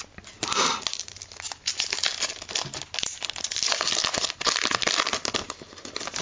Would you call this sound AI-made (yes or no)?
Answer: no